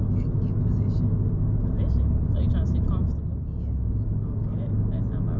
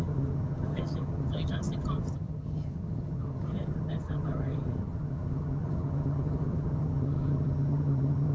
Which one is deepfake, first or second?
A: second